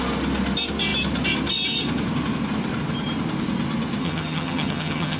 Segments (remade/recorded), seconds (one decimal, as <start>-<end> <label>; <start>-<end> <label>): 0.0-4.0 recorded; 4.0-5.2 remade